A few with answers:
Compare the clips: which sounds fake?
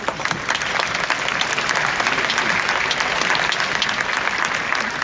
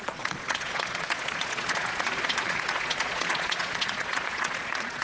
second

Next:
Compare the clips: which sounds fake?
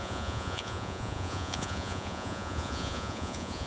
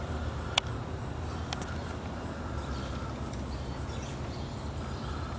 first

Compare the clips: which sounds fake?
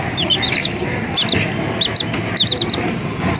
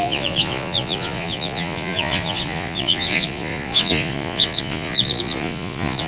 second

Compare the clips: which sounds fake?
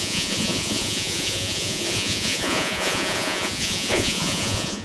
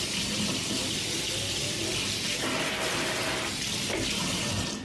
first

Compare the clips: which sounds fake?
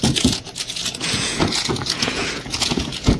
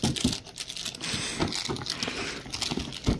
first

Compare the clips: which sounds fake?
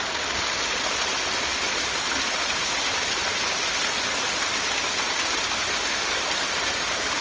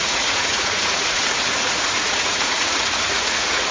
second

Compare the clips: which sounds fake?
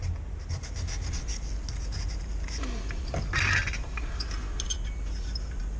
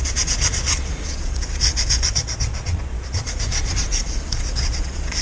second